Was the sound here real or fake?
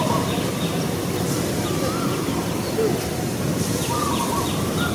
real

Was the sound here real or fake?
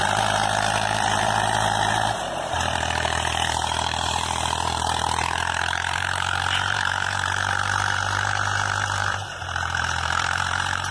fake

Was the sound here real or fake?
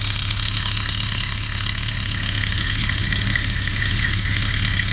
fake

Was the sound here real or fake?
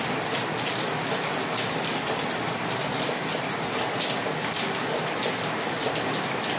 real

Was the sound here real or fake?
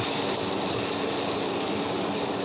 real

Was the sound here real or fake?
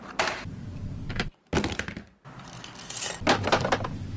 real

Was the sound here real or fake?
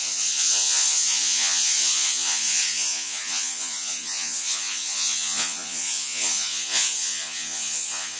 fake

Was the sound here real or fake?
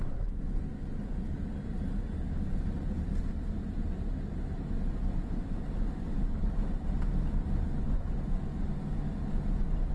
real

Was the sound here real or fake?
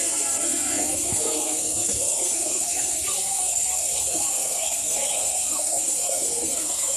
fake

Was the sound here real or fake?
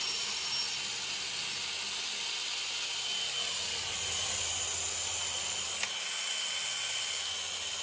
real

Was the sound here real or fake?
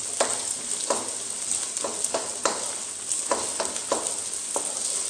real